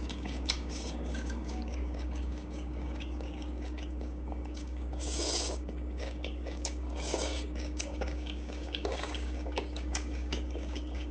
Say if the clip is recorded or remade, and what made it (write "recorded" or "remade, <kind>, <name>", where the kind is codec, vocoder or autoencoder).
remade, codec, DAC